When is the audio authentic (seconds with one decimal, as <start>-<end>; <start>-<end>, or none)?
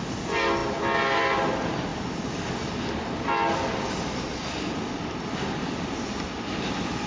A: 0.0-7.1